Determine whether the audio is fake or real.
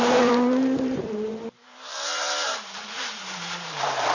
fake